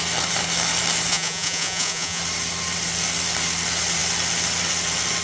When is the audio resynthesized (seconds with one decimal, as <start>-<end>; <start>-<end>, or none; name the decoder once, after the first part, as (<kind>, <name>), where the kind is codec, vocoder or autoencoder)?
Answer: 1.1-2.2 (vocoder, Vocos)